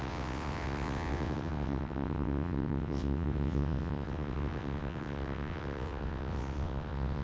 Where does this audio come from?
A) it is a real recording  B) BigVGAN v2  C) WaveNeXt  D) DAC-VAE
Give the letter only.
C